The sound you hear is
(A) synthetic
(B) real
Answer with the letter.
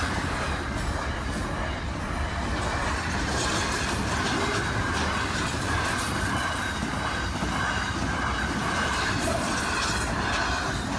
B